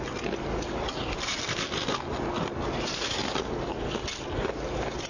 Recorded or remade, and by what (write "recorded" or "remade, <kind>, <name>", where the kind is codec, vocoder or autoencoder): recorded